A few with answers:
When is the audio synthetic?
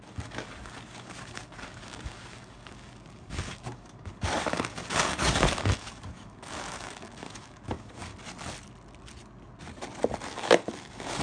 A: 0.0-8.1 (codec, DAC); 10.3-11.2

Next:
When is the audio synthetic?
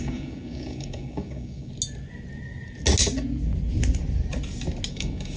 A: 0.0-1.7 (codec, DAC); 4.9-5.4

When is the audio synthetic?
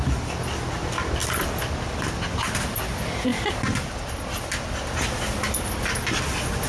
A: none